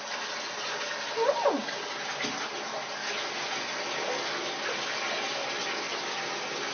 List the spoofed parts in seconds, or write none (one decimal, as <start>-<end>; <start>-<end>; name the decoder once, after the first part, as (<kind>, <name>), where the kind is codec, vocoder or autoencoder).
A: none